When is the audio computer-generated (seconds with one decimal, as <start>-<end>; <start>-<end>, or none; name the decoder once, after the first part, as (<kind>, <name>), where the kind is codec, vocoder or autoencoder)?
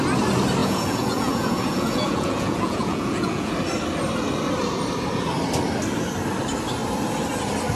0.6-3.5 (vocoder, Vocos)